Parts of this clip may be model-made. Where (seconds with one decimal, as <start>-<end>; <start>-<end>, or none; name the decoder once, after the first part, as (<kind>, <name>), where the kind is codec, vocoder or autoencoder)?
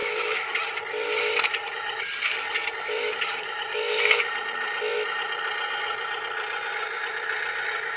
0.0-0.5 (autoencoder, DAC-VAE)